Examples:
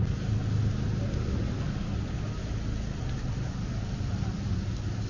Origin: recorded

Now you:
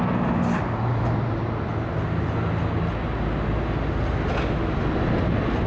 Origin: recorded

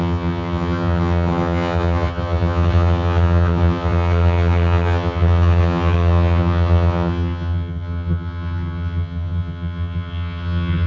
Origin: remade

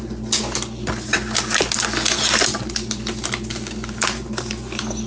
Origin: recorded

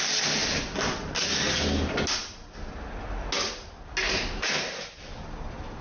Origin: recorded